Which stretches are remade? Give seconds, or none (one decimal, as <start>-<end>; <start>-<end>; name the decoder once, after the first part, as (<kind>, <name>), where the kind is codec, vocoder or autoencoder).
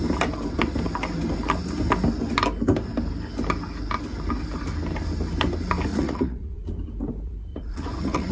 5.9-6.7 (vocoder, Vocos); 7.5-8.3